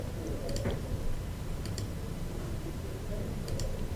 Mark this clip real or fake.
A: fake